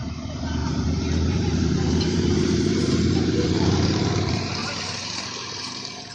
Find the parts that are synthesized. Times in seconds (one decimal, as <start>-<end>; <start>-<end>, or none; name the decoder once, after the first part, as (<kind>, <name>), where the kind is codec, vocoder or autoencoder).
0.0-6.1 (vocoder, BigVGAN v2)